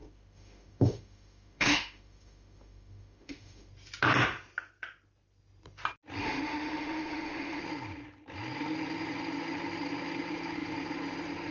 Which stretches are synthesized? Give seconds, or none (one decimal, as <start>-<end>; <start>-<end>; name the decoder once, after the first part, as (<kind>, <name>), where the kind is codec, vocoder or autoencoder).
0.0-3.7 (autoencoder, DAC-VAE); 6.2-7.6